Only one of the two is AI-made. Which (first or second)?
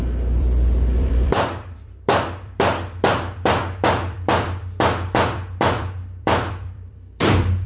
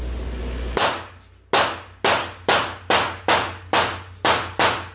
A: first